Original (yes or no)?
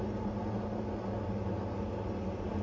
yes